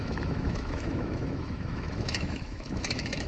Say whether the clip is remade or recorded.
remade